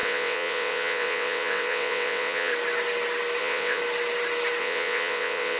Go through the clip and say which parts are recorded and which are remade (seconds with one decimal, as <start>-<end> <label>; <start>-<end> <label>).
0.0-2.5 remade; 2.5-3.4 recorded; 3.4-3.8 remade; 3.8-4.6 recorded; 4.6-5.6 remade